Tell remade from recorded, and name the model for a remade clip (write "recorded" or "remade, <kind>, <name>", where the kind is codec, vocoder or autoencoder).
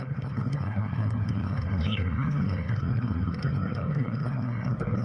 remade, codec, SNAC